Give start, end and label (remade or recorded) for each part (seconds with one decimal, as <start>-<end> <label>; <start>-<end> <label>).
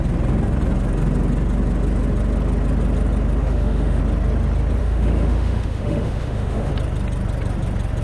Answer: 0.0-3.4 recorded; 3.4-4.0 remade; 4.0-4.8 recorded; 4.8-6.7 remade; 6.7-8.0 recorded